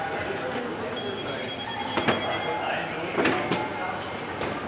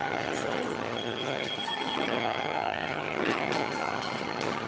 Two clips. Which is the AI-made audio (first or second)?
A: second